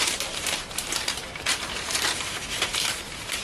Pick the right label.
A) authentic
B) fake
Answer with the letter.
B